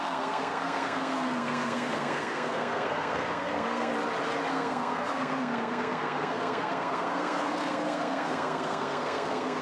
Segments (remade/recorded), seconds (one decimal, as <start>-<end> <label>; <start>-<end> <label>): 0.0-3.9 remade; 3.9-4.5 recorded; 4.5-9.6 remade